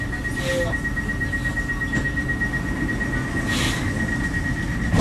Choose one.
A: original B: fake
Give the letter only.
A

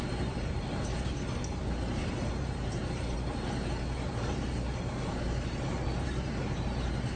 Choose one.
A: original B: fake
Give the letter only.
B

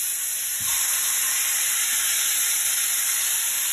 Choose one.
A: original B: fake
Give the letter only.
A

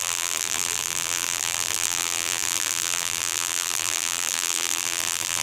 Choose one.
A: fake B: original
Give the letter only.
A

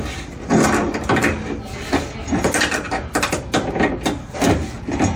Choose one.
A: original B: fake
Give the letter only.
A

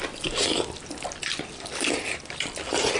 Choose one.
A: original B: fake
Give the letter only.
B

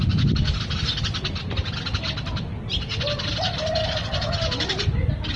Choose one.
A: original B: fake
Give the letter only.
A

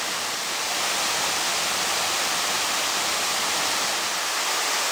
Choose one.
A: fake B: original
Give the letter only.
B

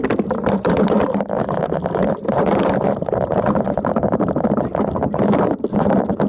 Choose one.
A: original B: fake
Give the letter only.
B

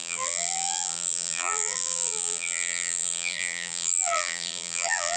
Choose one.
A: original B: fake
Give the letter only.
B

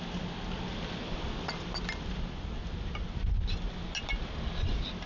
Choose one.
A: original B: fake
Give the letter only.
A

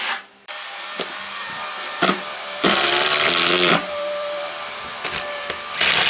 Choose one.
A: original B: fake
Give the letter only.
B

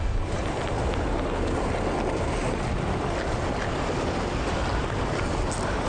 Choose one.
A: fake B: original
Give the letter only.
B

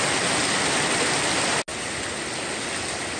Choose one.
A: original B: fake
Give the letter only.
A